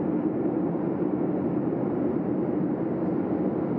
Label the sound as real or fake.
real